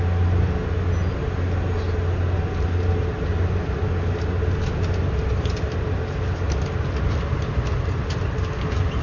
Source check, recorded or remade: recorded